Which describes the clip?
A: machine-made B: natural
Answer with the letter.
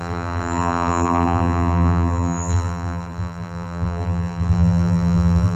A